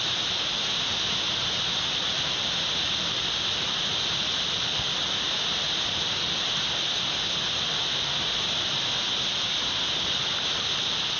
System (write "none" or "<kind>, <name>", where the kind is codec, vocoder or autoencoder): none